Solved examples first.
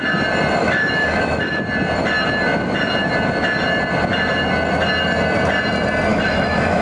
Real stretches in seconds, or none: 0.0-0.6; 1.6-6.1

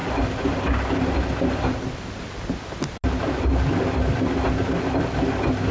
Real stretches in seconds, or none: 0.0-5.7

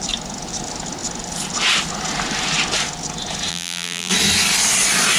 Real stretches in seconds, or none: 0.0-3.5; 4.1-5.2

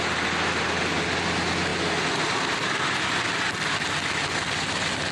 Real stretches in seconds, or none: 0.0-5.1

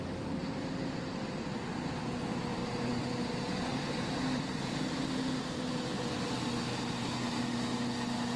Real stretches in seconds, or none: 0.0-0.4; 1.2-3.7; 5.1-8.4

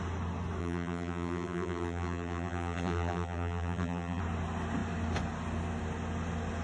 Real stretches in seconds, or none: 0.0-0.6; 4.2-6.6

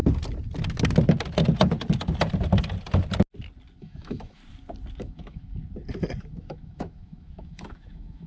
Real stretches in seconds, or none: 0.0-3.8; 4.4-5.0; 5.6-6.3